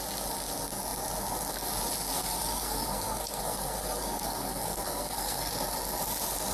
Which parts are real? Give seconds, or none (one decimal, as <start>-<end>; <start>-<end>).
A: 0.0-2.1; 5.5-6.5